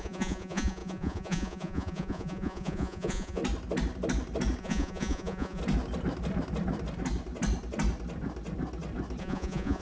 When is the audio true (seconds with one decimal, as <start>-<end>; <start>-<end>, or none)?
3.4-4.6; 5.6-9.2